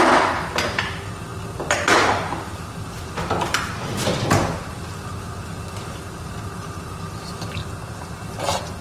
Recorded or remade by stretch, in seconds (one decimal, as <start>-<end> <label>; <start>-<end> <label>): 0.0-8.8 recorded